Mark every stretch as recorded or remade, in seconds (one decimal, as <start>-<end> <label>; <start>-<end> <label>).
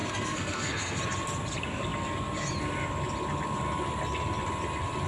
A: 0.0-1.0 remade; 1.0-5.1 recorded